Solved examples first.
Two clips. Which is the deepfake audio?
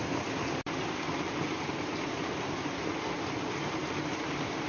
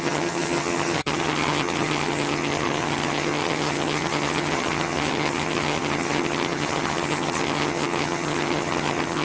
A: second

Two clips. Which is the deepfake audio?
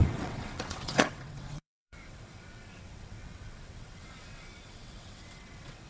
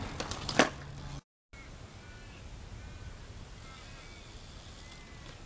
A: first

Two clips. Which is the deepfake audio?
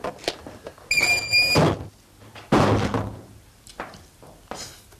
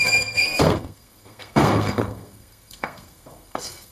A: second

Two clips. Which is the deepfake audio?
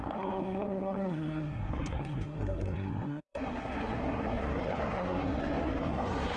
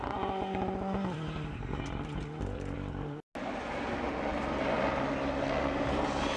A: first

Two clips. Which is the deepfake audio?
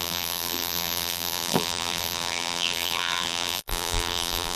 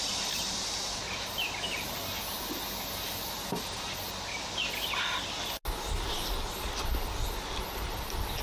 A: first